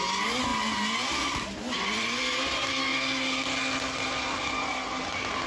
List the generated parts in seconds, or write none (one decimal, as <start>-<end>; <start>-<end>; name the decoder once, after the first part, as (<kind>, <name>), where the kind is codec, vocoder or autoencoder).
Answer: none